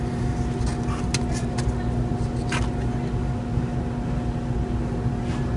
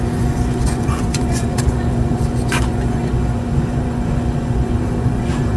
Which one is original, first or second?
first